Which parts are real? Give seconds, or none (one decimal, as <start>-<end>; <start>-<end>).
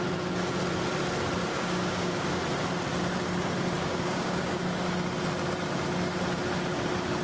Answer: 0.0-1.5; 2.4-3.8; 4.6-7.2